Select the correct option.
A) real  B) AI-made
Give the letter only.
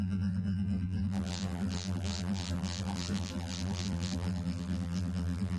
B